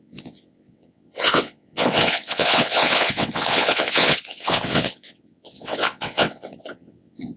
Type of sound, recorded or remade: remade